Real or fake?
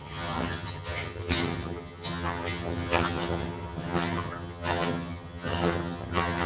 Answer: fake